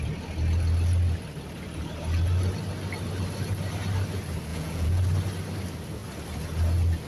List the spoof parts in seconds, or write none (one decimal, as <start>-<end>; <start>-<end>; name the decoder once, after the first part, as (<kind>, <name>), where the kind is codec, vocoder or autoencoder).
4.5-5.0 (vocoder, Vocos)